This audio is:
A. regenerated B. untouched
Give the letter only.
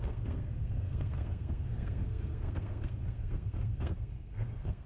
A